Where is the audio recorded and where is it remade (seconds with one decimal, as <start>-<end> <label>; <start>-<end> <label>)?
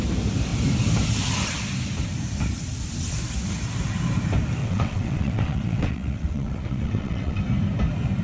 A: 0.0-4.6 recorded; 4.6-7.4 remade; 7.4-8.2 recorded